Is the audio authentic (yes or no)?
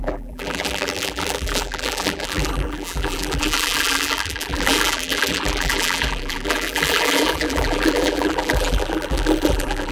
no